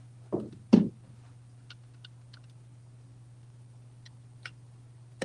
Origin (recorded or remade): recorded